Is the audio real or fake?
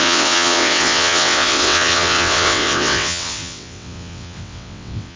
fake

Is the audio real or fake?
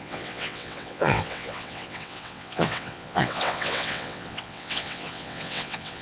fake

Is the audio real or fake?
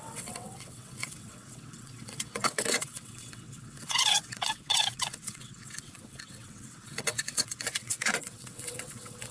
fake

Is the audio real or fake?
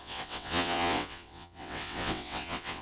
fake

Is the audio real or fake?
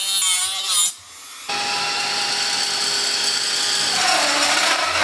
real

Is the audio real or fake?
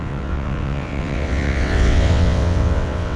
fake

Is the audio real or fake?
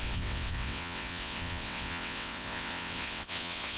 fake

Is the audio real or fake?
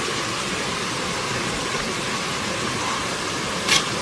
real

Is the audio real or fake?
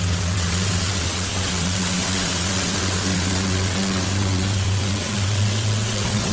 fake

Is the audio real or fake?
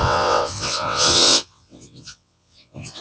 fake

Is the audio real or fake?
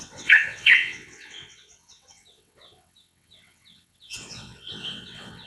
fake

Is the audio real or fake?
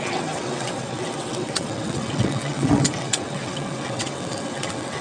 fake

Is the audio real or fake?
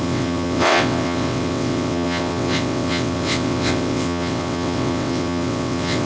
fake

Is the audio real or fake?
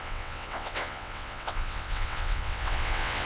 fake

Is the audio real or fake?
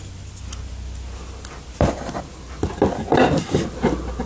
real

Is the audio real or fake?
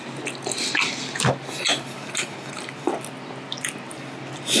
real